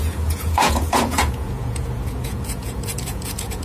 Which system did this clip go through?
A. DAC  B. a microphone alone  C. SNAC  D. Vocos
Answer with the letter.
D